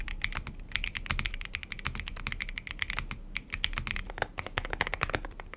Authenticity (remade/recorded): recorded